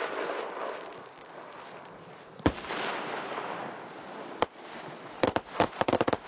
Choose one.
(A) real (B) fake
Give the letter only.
A